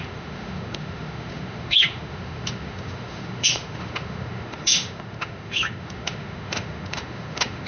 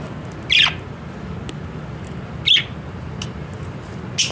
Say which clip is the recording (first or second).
second